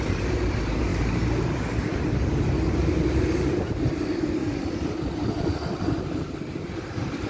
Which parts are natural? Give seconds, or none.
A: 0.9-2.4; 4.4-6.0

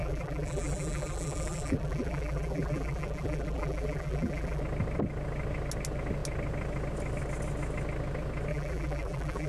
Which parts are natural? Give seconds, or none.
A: 4.6-8.5

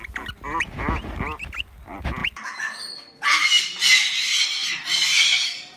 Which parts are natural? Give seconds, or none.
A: 0.0-5.8

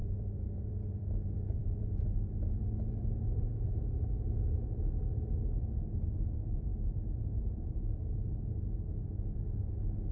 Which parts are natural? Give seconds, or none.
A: 3.5-10.1

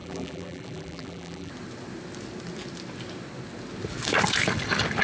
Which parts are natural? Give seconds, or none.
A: 1.5-5.0

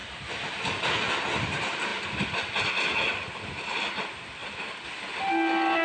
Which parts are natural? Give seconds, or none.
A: 1.1-1.9; 2.7-4.4; 5.3-5.8

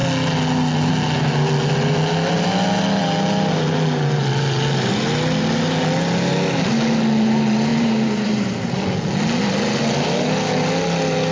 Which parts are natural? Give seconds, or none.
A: 0.0-7.7; 8.8-11.3